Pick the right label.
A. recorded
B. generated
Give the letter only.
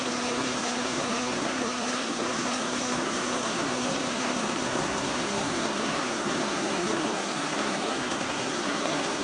B